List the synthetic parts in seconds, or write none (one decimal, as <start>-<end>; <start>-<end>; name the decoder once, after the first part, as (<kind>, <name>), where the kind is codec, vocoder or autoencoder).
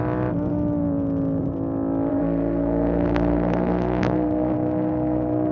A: 2.1-5.5 (codec, SNAC)